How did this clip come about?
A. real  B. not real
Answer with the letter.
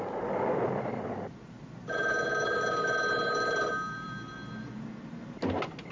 A